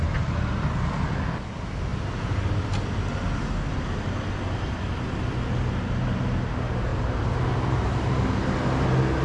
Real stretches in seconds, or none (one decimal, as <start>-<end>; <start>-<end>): 0.0-9.2